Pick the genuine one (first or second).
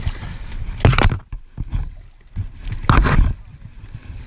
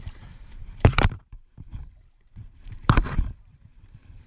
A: first